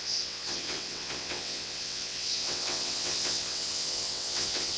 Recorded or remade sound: remade